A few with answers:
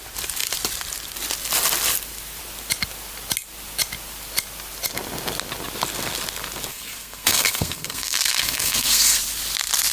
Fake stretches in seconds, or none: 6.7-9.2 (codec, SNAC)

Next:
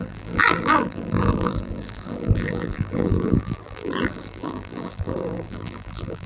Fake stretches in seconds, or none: 0.0-6.3 (vocoder, BigVGAN v2)

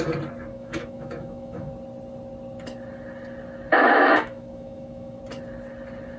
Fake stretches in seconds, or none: 0.5-1.7 (autoencoder, DAC-VAE); 3.7-5.2

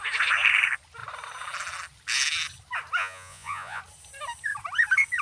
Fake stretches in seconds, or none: 3.0-3.8 (vocoder, Vocos)

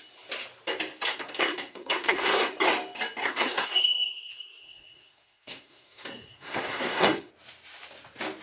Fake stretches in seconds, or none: 1.1-2.5 (codec, SNAC); 3.2-7.3

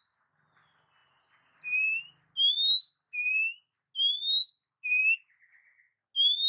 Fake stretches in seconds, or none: none